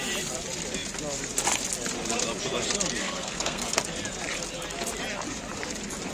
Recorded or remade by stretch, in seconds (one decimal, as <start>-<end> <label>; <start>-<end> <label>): 0.0-3.0 recorded; 3.0-3.8 remade; 3.8-6.1 recorded